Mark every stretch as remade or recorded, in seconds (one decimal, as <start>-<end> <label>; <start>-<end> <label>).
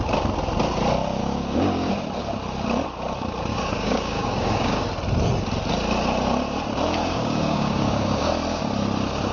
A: 0.0-1.2 recorded; 1.2-1.9 remade; 1.9-3.5 recorded; 3.5-4.9 remade; 4.9-7.0 recorded; 7.0-8.3 remade; 8.3-9.3 recorded